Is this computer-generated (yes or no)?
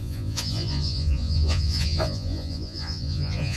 yes